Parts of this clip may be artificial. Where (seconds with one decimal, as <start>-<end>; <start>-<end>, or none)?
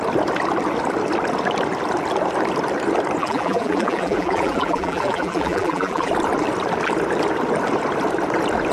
3.2-6.1